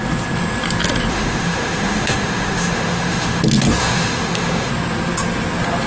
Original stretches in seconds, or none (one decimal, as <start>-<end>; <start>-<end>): 0.0-1.1; 3.4-3.8; 4.7-5.9